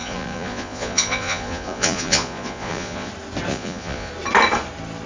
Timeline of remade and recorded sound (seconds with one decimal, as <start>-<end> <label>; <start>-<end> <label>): 0.0-3.1 remade; 3.1-3.5 recorded; 3.5-4.1 remade; 4.1-5.1 recorded